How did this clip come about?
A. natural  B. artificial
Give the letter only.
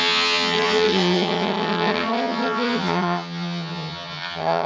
B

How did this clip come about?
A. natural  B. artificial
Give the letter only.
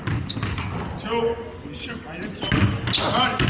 A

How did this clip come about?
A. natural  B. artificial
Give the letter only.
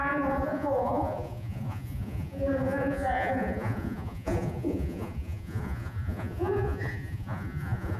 B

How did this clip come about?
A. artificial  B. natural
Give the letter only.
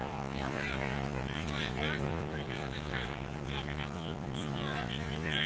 A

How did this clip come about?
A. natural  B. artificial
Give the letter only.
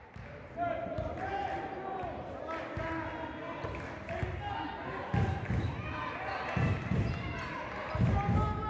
A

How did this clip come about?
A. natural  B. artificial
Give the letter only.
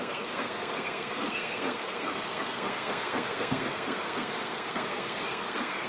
B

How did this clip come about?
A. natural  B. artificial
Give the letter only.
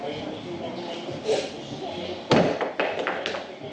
A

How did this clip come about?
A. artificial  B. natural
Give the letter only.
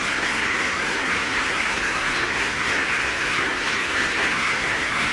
A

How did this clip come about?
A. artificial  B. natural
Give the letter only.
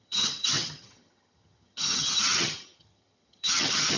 A